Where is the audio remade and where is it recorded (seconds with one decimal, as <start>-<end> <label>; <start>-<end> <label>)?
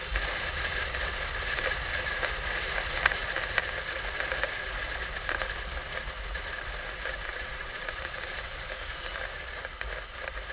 0.0-7.3 recorded; 7.3-8.0 remade; 8.0-10.5 recorded